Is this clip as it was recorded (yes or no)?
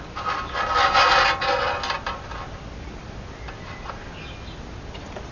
yes